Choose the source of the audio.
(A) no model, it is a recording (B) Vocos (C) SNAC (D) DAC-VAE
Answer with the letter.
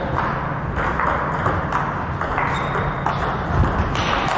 A